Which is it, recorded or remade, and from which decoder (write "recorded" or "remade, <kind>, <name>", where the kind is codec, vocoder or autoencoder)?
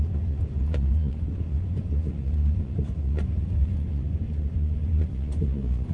remade, vocoder, Vocos